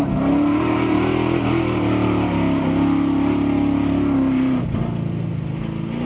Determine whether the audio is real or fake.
real